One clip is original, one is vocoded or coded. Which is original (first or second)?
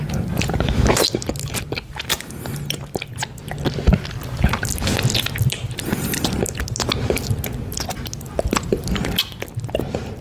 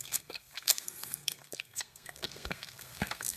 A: first